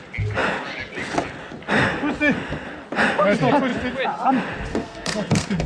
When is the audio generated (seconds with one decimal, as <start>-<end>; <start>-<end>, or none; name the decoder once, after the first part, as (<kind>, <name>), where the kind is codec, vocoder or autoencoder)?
4.7-5.7 (codec, SNAC)